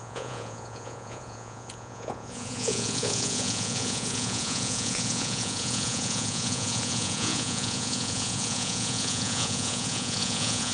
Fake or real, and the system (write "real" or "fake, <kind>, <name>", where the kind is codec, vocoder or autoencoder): fake, vocoder, Vocos